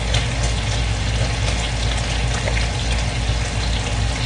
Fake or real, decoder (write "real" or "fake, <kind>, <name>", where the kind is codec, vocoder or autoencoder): real